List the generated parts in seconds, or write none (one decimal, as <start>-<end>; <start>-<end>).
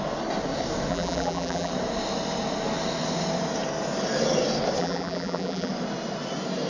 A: 0.9-1.7; 4.8-5.7